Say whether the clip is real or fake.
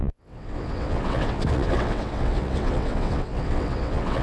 fake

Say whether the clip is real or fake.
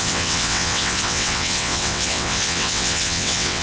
fake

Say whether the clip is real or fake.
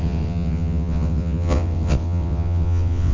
fake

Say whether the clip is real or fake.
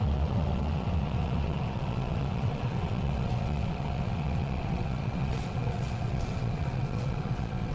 fake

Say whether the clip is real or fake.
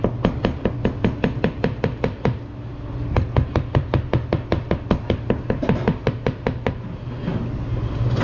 real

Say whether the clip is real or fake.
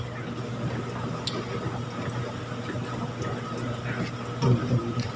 real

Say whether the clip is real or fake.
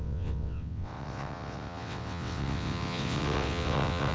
fake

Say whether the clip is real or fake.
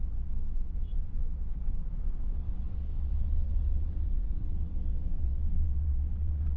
fake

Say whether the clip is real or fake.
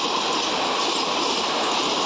real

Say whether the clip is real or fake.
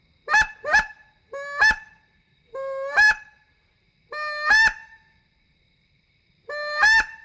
real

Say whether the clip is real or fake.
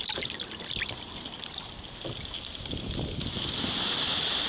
real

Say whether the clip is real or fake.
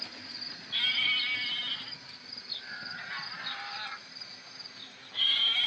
real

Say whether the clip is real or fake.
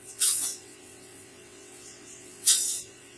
fake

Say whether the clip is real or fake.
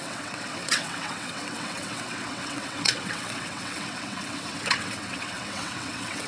fake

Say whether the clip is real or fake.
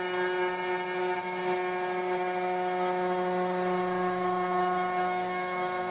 real